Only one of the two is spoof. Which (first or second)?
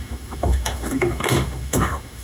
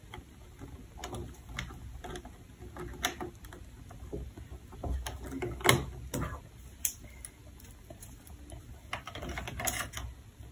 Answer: first